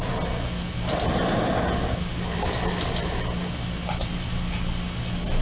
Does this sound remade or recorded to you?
recorded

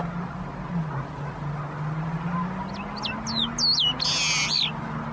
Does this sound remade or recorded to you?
recorded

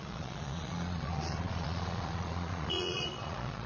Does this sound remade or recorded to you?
remade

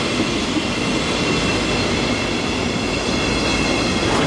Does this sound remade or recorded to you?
recorded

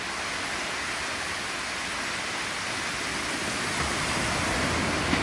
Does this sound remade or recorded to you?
recorded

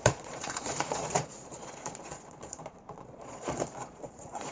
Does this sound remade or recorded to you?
remade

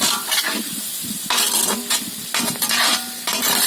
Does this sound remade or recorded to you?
recorded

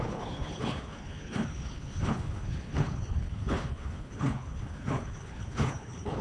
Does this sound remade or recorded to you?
remade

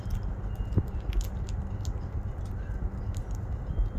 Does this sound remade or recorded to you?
recorded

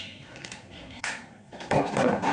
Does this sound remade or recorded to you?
remade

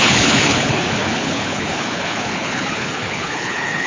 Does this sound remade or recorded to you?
remade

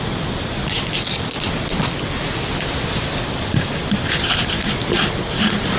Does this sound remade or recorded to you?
recorded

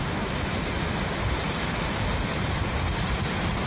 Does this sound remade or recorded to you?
recorded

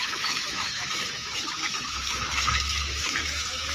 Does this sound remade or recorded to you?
remade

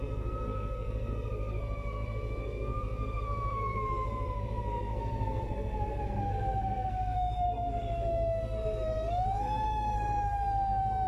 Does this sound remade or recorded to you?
remade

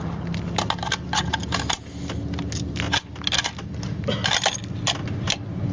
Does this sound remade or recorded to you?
recorded